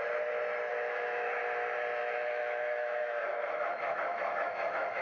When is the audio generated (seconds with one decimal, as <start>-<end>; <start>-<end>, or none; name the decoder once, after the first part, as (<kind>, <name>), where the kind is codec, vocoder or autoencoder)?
0.7-1.4 (autoencoder, DAC-VAE); 2.0-5.0